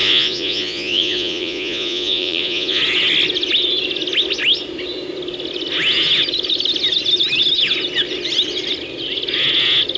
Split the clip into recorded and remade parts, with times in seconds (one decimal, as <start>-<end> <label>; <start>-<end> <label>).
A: 0.0-2.8 remade; 2.8-10.0 recorded